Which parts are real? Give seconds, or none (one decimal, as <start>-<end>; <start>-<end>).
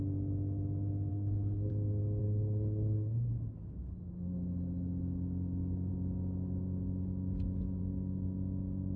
0.0-1.1; 1.7-2.2; 3.3-9.0